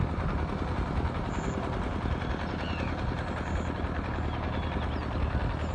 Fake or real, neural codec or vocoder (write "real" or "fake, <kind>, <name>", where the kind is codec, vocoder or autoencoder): real